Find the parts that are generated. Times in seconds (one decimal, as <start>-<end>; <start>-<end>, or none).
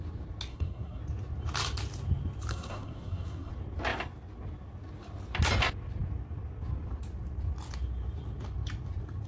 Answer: 0.5-1.0; 2.5-3.5